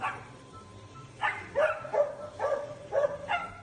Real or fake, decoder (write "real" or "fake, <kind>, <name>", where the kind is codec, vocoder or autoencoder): fake, vocoder, BigVGAN v2